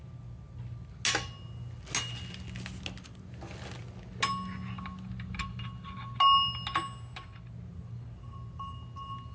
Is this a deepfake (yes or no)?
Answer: no